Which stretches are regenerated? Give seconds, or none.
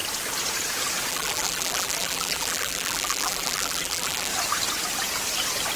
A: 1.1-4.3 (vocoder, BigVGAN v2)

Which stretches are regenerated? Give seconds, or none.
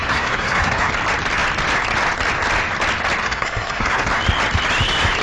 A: 0.0-0.9 (codec, SNAC); 3.2-4.1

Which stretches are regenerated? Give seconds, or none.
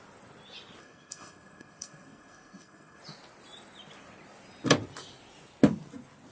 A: 0.8-3.0 (codec, SNAC)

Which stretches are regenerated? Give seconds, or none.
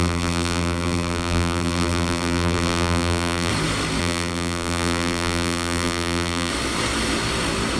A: 0.0-3.5 (vocoder, BigVGAN v2); 4.0-6.5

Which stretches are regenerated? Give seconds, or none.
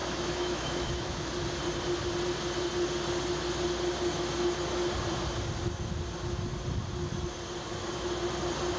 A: 0.0-1.3 (autoencoder, DAC-VAE)